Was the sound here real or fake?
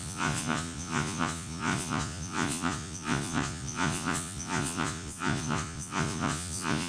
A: fake